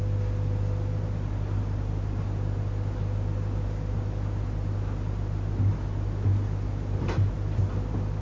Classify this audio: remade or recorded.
recorded